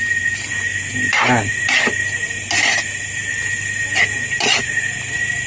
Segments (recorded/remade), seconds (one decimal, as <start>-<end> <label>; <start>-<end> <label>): 0.0-5.5 recorded